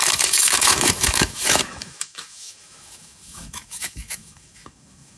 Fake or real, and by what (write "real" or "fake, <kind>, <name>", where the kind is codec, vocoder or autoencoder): fake, autoencoder, DAC-VAE